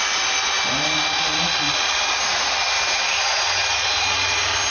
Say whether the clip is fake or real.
real